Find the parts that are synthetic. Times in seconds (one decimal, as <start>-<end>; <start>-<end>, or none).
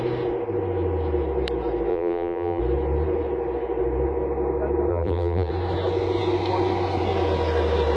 1.9-2.6; 4.9-5.5